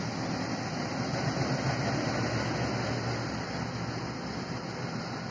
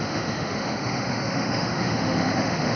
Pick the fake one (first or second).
second